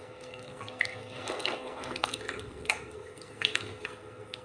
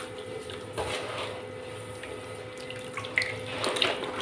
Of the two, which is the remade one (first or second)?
first